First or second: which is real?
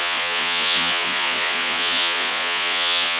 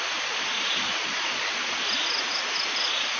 second